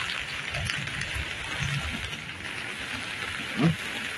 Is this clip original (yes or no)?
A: yes